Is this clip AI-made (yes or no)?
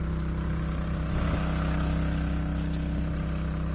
no